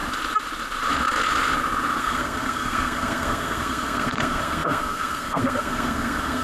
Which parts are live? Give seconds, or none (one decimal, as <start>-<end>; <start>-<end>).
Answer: 0.0-2.0